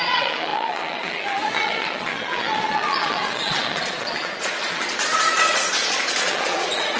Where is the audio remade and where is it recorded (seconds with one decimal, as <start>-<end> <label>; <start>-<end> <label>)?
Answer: 0.0-7.0 remade